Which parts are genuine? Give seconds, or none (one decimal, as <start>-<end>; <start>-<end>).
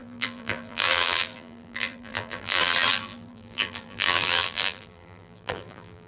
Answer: none